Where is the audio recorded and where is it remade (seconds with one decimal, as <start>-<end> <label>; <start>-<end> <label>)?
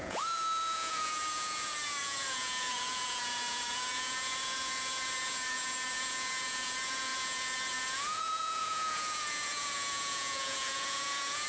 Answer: 0.0-11.5 remade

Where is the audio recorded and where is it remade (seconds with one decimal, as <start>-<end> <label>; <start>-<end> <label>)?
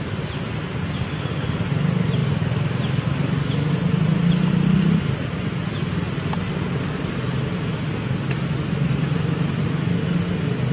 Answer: 0.0-10.7 recorded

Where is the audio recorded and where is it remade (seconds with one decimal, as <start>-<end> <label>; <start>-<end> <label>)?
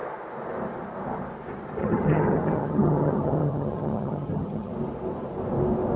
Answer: 0.0-1.8 recorded; 1.8-4.7 remade; 4.7-6.0 recorded